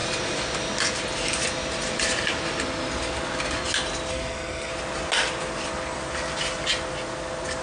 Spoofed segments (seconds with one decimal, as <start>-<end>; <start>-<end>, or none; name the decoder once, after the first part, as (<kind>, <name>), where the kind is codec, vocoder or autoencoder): 4.1-4.7 (codec, SNAC)